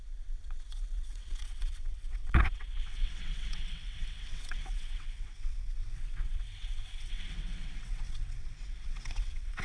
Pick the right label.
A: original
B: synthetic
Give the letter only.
B